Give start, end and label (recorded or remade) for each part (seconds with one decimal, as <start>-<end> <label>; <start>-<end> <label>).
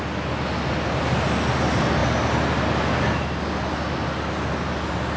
0.0-5.2 recorded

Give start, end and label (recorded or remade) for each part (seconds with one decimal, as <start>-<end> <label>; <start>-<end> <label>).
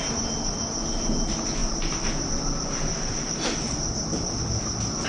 0.0-5.1 recorded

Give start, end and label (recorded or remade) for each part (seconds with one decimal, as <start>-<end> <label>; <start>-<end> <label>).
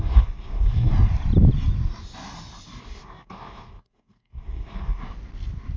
0.0-0.9 remade; 0.9-2.8 recorded; 2.8-5.0 remade; 5.0-5.8 recorded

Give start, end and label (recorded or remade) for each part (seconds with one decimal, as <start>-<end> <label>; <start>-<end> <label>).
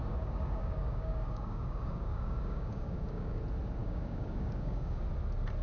0.0-3.4 remade; 3.4-3.8 recorded; 3.8-5.0 remade; 5.0-5.6 recorded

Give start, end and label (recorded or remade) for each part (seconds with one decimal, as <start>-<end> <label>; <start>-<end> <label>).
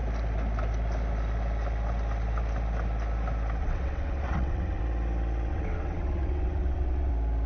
0.0-3.6 recorded; 3.6-4.8 remade; 4.8-5.5 recorded; 5.5-7.1 remade; 7.1-7.5 recorded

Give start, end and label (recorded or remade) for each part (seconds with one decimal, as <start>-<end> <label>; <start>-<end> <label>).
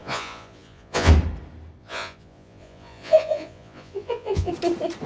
0.0-1.1 remade; 1.1-1.8 recorded; 1.8-4.5 remade; 4.5-5.1 recorded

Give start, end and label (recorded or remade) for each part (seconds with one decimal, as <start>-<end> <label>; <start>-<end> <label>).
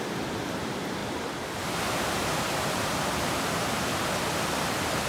0.0-1.0 recorded; 1.0-4.1 remade; 4.1-5.1 recorded